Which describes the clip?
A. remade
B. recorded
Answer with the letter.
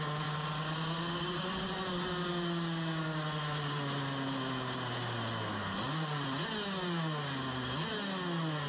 B